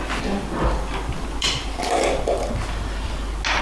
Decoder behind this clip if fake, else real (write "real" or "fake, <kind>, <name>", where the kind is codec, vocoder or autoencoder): real